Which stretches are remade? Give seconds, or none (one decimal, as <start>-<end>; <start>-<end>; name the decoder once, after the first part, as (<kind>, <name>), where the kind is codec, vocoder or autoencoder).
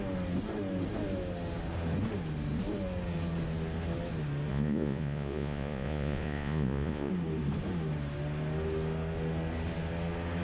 4.5-7.1 (vocoder, Vocos)